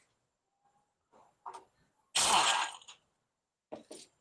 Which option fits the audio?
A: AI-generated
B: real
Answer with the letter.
B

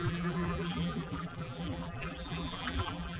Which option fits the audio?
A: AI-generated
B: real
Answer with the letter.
A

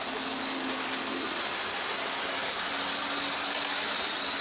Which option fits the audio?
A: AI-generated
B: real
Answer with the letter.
B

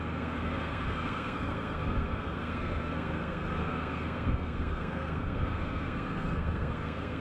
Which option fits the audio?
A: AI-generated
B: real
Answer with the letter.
A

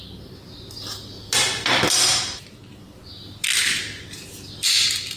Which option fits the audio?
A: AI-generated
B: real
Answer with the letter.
B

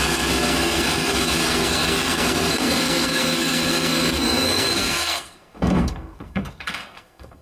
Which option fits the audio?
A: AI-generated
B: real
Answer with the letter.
A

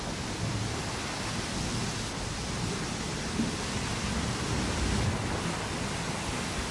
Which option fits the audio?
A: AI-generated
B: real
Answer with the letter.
B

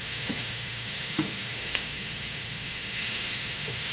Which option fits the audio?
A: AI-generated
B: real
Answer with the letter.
A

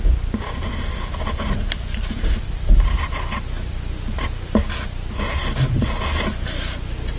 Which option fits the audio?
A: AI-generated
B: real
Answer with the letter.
B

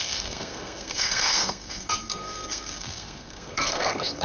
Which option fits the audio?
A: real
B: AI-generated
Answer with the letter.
B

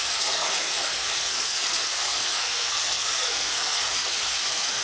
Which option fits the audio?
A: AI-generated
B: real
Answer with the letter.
A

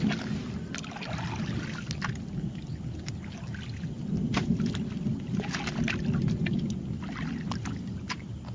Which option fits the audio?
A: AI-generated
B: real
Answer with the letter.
B